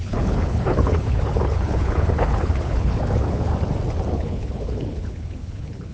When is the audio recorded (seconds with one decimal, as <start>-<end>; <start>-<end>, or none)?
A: 3.5-4.1